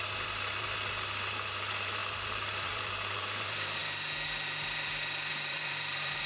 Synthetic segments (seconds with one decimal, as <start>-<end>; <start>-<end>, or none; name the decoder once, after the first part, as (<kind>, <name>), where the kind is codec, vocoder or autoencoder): 0.0-3.8 (vocoder, BigVGAN v2); 5.3-6.3